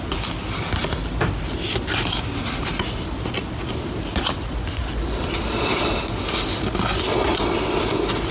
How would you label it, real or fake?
real